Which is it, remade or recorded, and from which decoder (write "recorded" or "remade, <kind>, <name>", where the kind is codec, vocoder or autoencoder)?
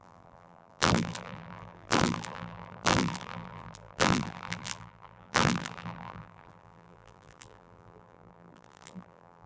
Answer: remade, vocoder, BigVGAN v2